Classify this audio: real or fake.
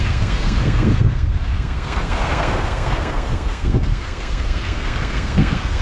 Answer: fake